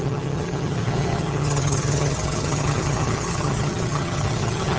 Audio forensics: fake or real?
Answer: fake